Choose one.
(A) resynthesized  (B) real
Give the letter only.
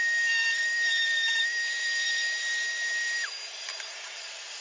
A